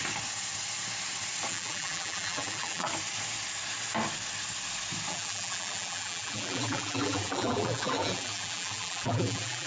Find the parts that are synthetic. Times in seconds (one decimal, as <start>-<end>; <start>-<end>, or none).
1.5-2.9; 5.1-9.7